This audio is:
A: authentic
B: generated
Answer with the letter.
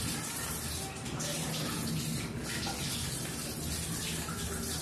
A